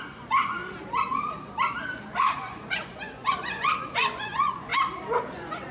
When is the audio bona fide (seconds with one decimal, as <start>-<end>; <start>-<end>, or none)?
0.6-2.1; 4.7-5.3